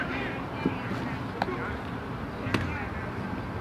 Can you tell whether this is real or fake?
real